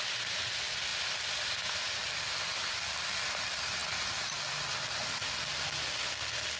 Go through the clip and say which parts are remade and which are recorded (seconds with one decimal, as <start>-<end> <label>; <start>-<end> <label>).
0.0-6.6 recorded